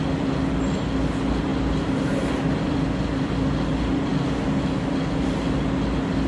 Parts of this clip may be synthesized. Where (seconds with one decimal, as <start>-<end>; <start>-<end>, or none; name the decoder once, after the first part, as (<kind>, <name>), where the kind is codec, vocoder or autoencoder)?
none